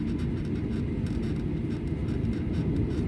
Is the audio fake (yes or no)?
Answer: no